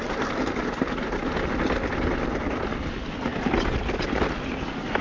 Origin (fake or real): real